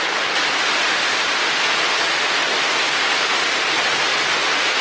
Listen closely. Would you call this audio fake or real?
real